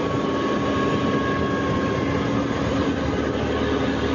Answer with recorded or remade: recorded